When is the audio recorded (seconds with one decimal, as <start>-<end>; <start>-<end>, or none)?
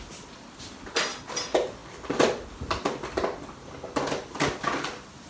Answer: 0.0-5.3